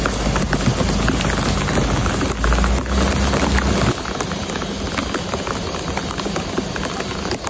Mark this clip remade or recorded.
recorded